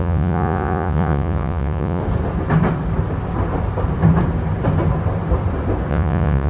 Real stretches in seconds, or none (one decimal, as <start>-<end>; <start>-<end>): 2.0-5.9